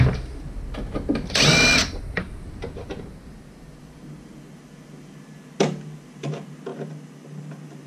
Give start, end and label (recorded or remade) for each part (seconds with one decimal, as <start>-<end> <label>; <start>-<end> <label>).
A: 0.0-1.8 recorded; 1.8-3.0 remade; 3.0-7.9 recorded